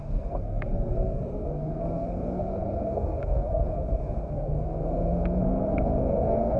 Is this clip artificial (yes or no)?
yes